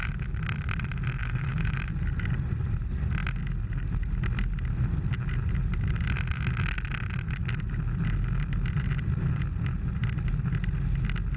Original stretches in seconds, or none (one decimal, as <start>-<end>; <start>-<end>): 0.0-1.2; 1.8-11.4